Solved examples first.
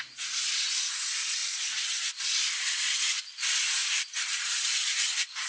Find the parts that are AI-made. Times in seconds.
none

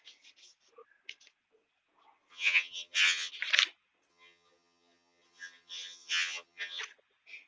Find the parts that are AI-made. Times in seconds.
2.3-3.3; 4.1-6.8

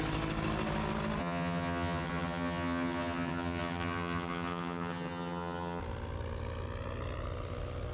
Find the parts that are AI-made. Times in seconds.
1.2-5.8

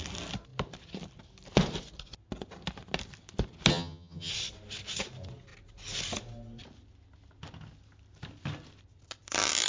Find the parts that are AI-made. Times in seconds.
3.7-4.3